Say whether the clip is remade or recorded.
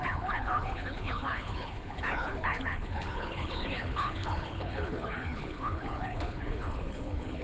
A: remade